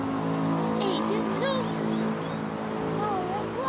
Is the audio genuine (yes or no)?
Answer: yes